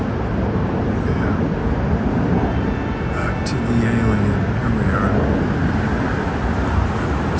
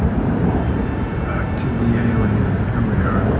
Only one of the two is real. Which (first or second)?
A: first